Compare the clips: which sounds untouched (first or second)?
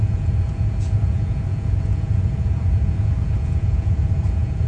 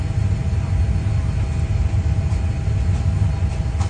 second